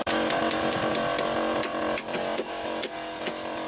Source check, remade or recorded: remade